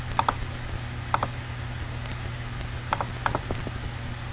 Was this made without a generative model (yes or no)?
yes